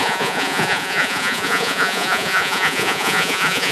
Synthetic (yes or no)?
yes